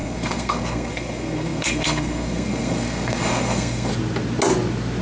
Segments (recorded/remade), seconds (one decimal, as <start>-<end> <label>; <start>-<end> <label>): 0.0-3.9 remade; 3.9-5.0 recorded